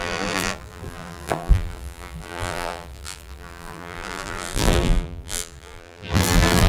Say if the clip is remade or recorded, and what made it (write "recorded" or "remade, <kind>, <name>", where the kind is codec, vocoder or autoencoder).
remade, vocoder, BigVGAN v2